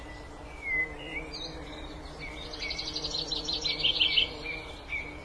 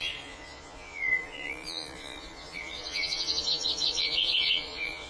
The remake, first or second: second